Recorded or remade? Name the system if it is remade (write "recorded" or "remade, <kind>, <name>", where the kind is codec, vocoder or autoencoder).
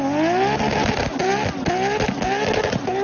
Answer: recorded